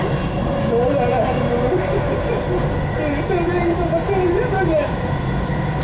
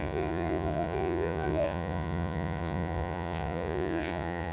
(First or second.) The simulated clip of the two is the second